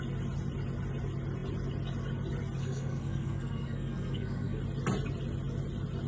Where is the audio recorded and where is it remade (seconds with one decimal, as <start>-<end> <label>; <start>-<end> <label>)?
0.0-2.6 recorded; 2.6-4.6 remade; 4.6-6.1 recorded

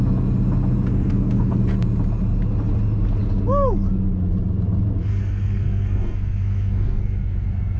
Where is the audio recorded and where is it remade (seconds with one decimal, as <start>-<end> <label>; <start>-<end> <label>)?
0.0-0.9 recorded; 0.9-1.6 remade; 1.6-5.2 recorded; 5.2-7.8 remade

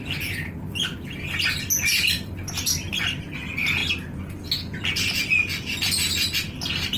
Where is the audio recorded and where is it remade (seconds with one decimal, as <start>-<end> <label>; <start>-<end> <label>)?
0.0-7.0 recorded

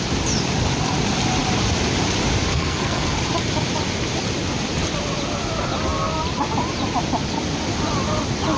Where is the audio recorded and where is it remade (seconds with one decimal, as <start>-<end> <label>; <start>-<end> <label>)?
0.0-2.5 recorded; 2.5-3.1 remade; 3.1-8.6 recorded

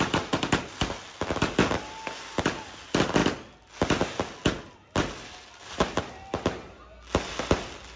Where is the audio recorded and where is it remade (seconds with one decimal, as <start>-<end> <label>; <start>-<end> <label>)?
0.0-8.0 recorded

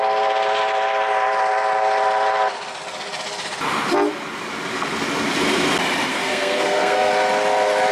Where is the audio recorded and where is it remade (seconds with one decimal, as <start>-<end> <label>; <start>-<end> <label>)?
0.0-6.1 recorded; 6.1-7.1 remade; 7.1-7.9 recorded

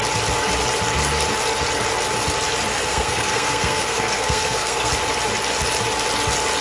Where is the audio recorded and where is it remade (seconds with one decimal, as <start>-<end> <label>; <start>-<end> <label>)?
0.0-2.7 recorded; 2.7-4.9 remade; 4.9-6.6 recorded